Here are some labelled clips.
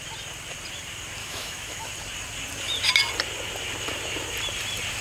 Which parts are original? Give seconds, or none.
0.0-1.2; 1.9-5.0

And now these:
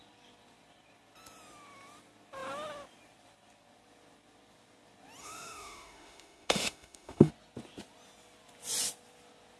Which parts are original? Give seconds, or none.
0.0-5.2; 7.3-9.6

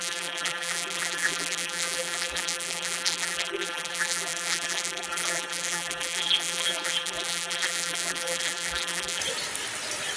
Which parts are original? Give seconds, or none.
9.2-10.2

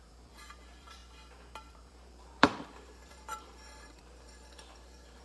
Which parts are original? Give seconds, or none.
1.0-1.7

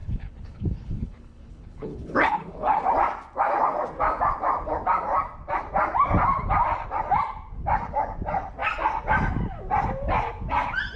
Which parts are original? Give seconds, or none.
2.8-11.0

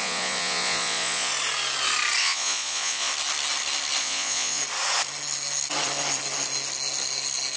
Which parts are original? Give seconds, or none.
1.3-2.2; 3.1-4.0; 4.6-7.6

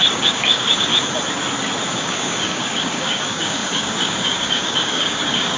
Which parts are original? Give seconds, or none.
0.9-1.9

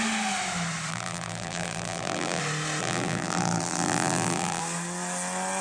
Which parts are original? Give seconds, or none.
0.0-0.9; 2.4-2.8; 4.6-5.6